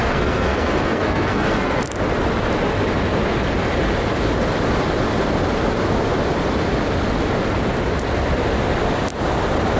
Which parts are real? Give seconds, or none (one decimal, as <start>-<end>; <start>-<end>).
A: 1.8-9.8